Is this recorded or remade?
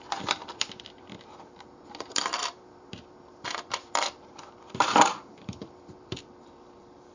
remade